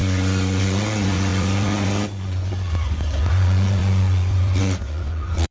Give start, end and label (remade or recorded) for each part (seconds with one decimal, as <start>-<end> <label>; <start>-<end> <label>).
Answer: 0.0-5.5 remade